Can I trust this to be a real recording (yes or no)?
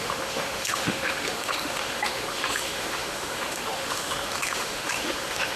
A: no